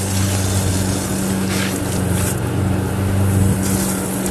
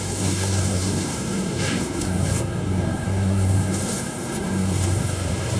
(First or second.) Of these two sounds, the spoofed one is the second